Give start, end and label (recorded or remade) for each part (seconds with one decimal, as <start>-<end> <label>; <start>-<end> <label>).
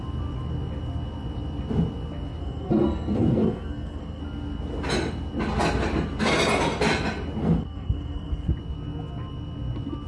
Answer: 0.0-2.4 recorded; 2.4-4.2 remade; 4.2-7.4 recorded; 7.4-8.5 remade; 8.5-10.1 recorded